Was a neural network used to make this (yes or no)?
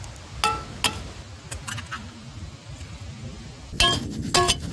no